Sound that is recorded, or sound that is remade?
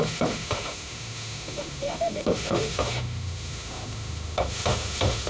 remade